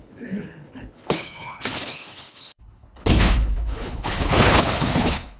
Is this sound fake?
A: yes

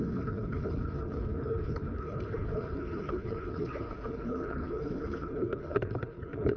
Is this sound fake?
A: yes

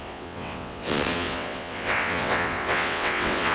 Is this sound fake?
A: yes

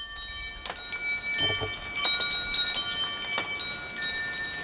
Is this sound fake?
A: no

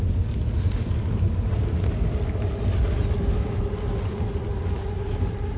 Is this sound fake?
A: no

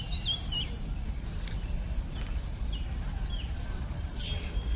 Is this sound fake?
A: yes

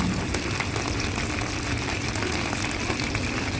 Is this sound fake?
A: no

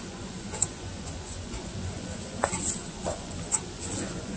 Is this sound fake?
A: yes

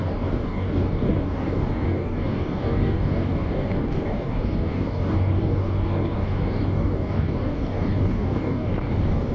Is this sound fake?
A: yes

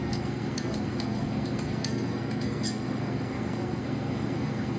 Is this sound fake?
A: yes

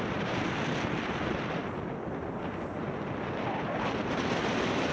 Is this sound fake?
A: no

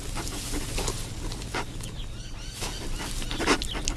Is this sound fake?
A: no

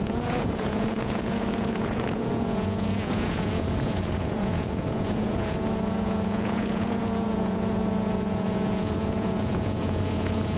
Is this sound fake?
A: yes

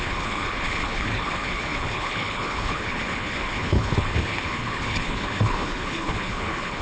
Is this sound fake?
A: yes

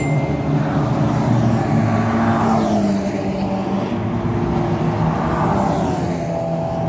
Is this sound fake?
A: no